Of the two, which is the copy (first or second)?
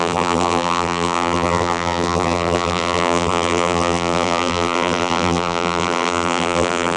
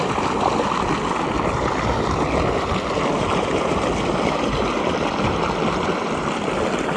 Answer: first